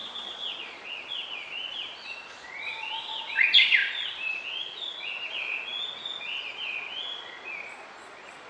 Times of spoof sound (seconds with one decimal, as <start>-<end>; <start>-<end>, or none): 0.0-8.5

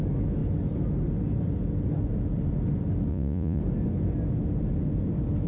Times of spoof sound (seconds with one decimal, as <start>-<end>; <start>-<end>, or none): 3.1-3.6

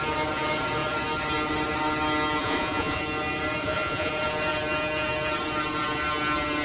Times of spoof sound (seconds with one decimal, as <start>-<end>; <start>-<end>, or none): 2.4-3.0; 3.6-4.1

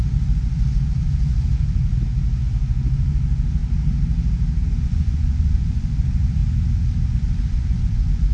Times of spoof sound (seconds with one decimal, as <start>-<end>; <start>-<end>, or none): 0.0-1.9; 2.4-3.6; 4.8-6.4; 7.1-8.3